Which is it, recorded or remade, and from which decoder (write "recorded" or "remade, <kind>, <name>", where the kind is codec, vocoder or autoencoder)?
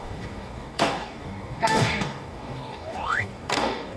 remade, codec, DAC